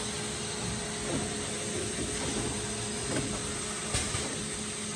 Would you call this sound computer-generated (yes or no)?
no